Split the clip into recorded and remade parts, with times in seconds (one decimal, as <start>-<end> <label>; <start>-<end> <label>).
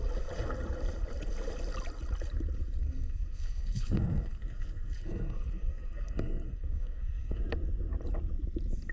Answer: 0.0-2.8 recorded; 2.8-7.4 remade; 7.4-8.9 recorded